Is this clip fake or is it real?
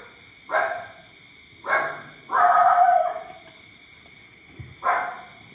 real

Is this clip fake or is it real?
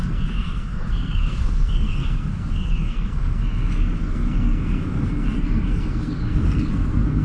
fake